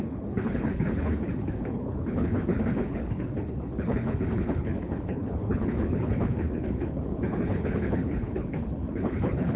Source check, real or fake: fake